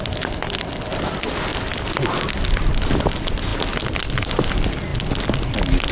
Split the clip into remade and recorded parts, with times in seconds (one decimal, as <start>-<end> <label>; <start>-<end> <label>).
0.0-5.9 recorded